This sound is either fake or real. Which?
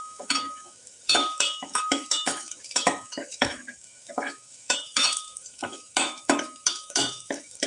fake